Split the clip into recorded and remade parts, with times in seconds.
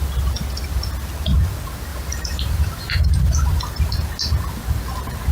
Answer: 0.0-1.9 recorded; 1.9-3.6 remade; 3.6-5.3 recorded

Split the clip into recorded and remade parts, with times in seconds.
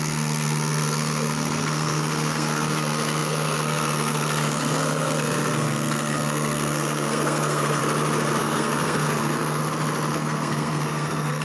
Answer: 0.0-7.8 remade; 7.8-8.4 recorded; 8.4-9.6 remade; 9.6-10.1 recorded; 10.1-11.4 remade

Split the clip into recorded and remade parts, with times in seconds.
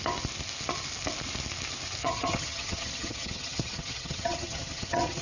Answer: 0.0-2.0 recorded; 2.0-5.2 remade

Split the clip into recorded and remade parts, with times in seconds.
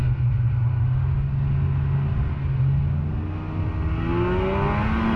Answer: 0.0-5.2 recorded